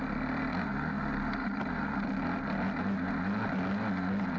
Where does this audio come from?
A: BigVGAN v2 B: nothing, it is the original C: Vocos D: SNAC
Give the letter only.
B